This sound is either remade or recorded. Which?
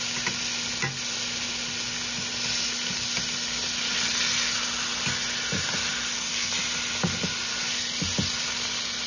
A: recorded